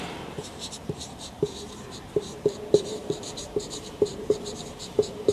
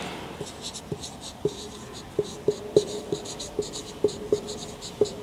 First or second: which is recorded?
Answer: second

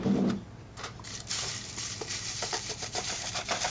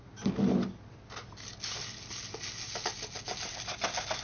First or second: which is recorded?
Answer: second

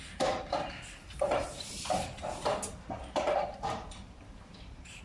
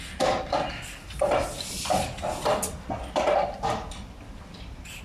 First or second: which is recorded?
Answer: second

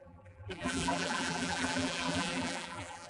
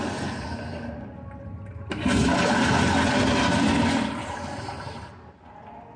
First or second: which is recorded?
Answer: second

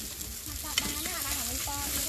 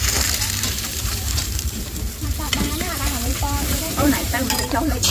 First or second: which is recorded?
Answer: first